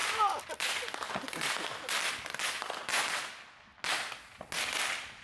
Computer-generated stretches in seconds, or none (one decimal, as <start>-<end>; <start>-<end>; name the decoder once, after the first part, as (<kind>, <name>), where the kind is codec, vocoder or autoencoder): none